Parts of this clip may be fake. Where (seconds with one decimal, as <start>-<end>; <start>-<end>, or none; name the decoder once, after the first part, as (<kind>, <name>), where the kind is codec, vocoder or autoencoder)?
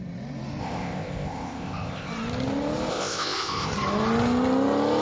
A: 0.6-2.1 (codec, ZipCodec); 2.9-3.7